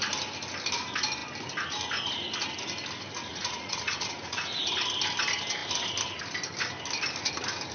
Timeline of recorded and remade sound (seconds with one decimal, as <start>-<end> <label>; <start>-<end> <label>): 0.0-3.3 recorded; 3.3-4.7 remade; 4.7-7.7 recorded